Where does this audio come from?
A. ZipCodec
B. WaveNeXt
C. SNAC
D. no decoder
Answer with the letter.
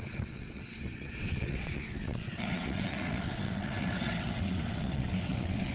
B